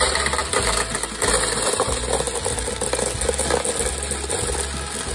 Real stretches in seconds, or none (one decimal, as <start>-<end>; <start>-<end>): 0.0-5.1